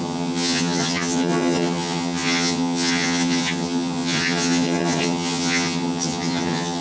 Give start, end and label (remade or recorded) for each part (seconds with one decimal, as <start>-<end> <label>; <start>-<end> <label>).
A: 0.0-6.8 remade